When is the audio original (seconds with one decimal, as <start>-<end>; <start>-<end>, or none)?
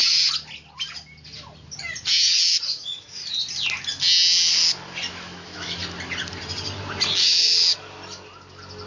0.0-2.7; 3.2-5.1; 5.8-8.9